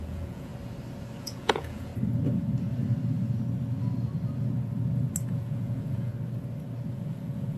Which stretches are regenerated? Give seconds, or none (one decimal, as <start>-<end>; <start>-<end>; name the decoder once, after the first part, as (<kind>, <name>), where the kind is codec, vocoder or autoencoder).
0.0-0.5 (vocoder, Vocos); 1.2-1.9; 5.3-6.1; 6.9-7.6

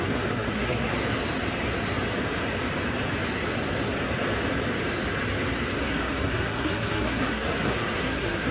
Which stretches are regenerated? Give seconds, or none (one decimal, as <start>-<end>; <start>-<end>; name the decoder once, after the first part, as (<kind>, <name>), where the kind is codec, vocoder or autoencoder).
0.0-0.9 (codec, SNAC); 5.8-8.5

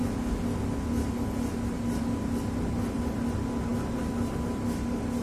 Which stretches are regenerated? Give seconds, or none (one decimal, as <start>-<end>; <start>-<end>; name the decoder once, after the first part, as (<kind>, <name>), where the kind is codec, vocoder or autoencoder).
none

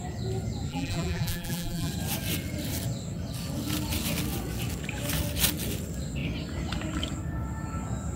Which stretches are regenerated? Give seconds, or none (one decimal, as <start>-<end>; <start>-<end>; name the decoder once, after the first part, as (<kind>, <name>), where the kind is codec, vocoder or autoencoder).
0.7-1.9 (vocoder, BigVGAN v2)

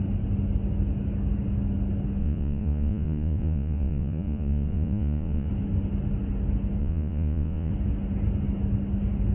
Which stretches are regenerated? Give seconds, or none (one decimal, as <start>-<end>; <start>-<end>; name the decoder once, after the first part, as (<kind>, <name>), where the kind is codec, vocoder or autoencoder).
2.2-5.5 (vocoder, Vocos); 6.8-7.7

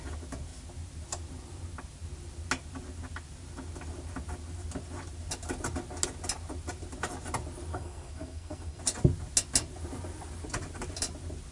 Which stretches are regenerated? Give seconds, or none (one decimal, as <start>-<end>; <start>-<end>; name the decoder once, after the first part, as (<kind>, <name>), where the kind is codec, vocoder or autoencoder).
7.7-8.8 (codec, SNAC)